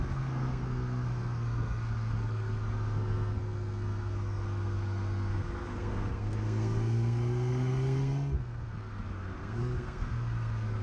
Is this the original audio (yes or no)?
no